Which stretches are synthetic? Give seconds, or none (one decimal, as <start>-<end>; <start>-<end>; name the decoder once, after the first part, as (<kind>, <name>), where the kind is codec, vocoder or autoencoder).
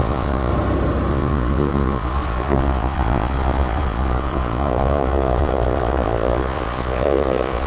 0.0-0.5 (vocoder, Vocos); 1.1-7.7